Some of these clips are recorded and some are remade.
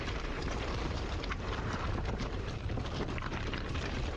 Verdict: remade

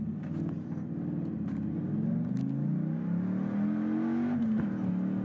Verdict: recorded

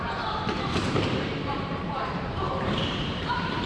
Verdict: remade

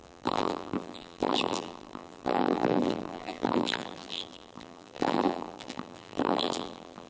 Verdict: remade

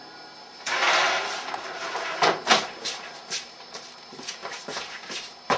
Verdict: remade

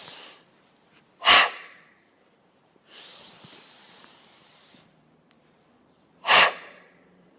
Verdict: remade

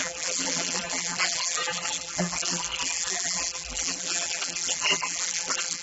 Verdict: remade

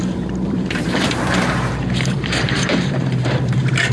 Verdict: remade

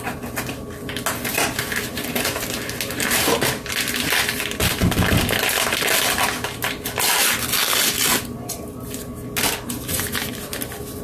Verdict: recorded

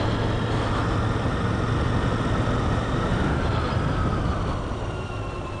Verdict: recorded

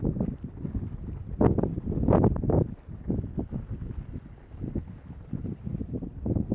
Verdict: recorded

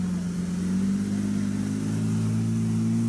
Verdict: recorded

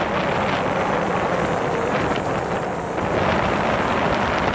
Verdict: recorded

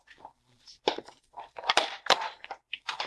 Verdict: remade